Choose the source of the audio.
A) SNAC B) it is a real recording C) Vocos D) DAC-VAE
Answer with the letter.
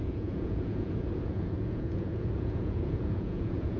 C